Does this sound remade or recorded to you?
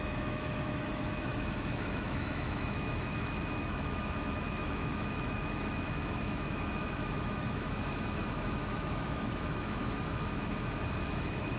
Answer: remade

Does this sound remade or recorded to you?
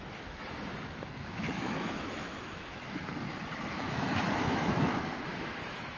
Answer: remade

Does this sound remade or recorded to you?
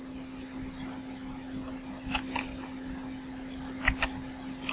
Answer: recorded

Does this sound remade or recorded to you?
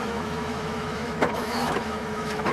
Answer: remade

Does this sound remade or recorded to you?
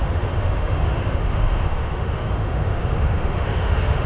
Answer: remade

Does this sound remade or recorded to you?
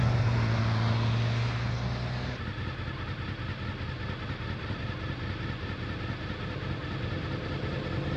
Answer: recorded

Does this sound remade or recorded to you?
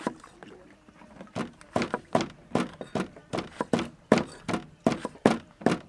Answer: recorded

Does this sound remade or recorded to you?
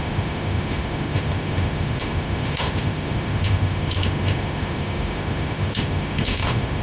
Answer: remade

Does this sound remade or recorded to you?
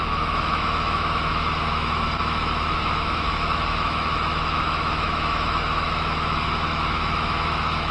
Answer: remade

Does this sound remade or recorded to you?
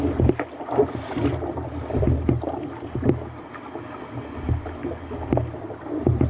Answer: recorded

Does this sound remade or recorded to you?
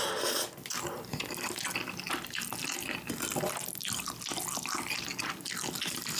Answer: recorded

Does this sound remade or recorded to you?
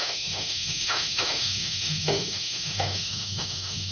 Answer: remade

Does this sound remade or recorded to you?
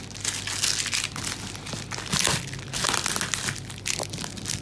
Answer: recorded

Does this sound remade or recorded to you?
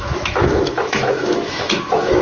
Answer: remade